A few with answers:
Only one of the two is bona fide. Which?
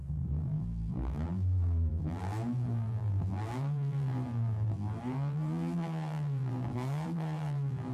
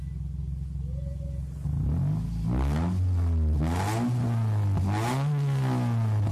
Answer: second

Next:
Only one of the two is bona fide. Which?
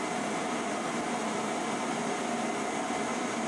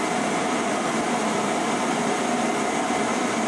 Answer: first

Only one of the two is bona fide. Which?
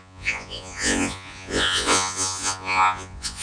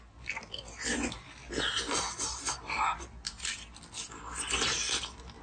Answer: second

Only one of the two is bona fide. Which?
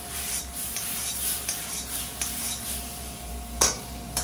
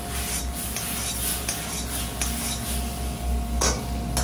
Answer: second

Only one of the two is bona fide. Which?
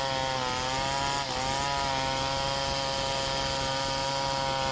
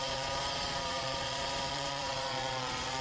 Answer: first